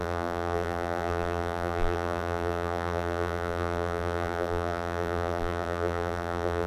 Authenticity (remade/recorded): remade